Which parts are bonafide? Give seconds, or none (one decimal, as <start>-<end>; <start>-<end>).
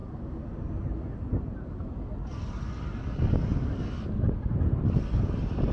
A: 0.0-5.7